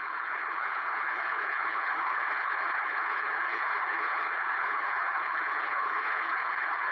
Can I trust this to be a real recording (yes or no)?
no